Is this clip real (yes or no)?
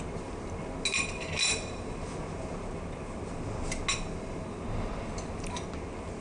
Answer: yes